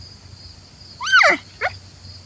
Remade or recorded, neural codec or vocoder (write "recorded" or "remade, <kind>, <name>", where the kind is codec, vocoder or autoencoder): recorded